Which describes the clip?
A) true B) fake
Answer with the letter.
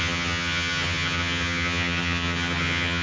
B